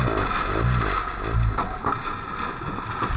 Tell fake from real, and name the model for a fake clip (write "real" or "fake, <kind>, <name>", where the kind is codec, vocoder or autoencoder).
real